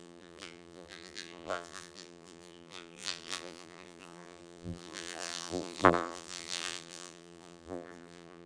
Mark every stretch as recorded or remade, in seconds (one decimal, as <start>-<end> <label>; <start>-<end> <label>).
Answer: 0.0-8.5 remade